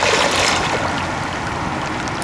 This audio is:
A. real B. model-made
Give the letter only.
A